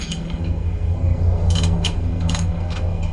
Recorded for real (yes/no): no